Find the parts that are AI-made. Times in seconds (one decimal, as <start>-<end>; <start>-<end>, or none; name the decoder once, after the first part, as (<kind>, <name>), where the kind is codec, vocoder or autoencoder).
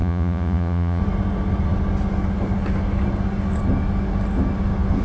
0.0-1.0 (vocoder, Vocos)